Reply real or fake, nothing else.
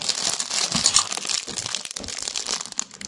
real